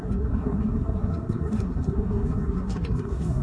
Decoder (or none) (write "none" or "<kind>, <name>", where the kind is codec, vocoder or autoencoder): codec, SNAC